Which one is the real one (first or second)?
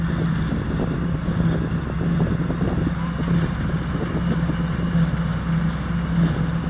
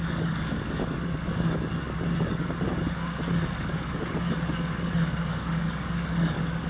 first